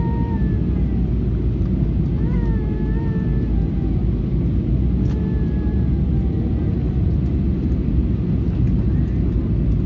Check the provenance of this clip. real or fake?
real